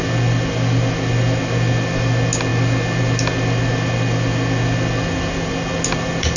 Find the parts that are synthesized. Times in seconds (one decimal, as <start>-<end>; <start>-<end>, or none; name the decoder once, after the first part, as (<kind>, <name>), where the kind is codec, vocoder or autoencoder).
none